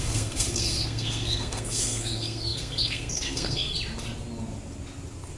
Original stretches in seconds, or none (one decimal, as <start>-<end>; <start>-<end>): 3.7-5.4